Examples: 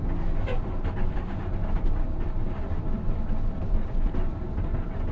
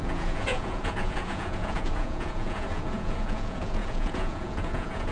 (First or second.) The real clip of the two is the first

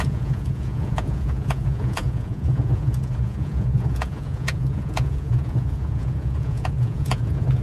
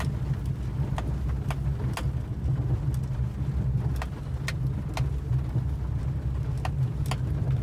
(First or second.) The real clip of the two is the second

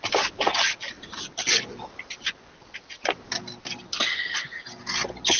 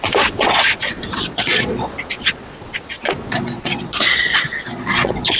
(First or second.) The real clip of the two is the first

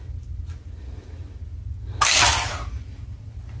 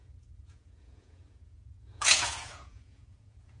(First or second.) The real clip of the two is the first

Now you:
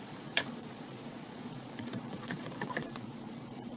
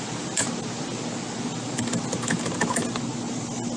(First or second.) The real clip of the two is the second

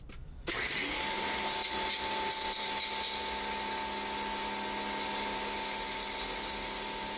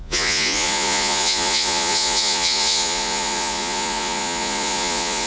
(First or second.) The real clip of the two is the first